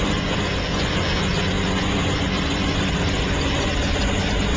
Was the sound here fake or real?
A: fake